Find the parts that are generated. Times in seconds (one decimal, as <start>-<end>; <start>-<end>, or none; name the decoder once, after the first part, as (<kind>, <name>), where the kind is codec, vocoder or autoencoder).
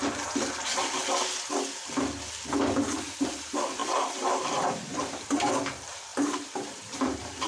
0.0-1.0 (vocoder, BigVGAN v2); 3.2-7.5